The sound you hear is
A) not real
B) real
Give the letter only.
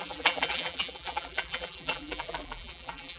A